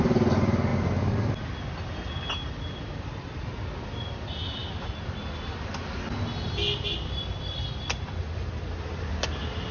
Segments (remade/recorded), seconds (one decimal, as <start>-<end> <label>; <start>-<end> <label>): 0.0-9.7 recorded